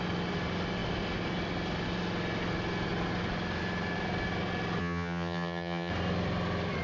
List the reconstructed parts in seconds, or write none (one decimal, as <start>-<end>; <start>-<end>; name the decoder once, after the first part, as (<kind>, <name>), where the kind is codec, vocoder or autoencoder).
4.8-5.9 (vocoder, HiFi-GAN)